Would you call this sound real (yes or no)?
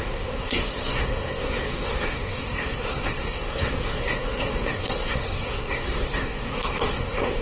no